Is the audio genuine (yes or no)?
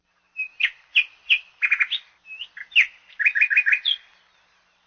yes